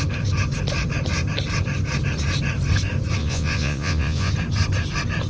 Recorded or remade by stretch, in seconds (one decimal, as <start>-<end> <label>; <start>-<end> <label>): 0.0-3.2 recorded; 3.2-4.3 remade; 4.3-5.3 recorded